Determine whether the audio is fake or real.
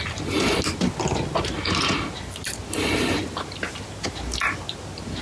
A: real